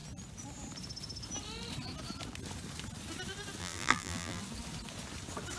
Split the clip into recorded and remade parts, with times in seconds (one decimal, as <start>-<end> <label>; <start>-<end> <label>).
0.0-3.6 recorded; 3.6-4.4 remade; 4.4-5.6 recorded